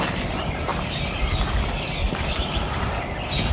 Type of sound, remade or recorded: recorded